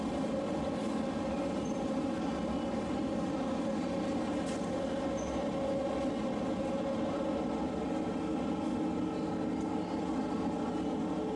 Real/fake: real